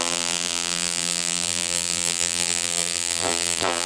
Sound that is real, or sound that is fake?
fake